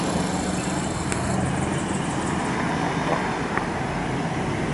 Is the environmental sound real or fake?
real